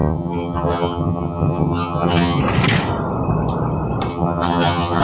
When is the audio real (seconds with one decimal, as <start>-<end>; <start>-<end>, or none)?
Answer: 2.4-4.1